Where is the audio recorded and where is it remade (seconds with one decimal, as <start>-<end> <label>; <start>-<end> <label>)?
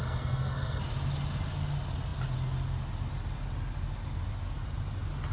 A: 0.0-0.8 remade; 0.8-5.3 recorded